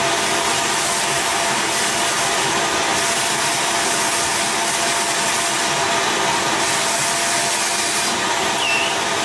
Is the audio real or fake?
real